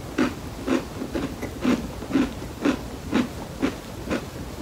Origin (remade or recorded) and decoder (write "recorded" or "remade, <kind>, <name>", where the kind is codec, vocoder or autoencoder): recorded